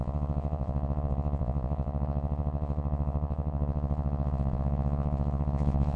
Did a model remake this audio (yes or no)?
yes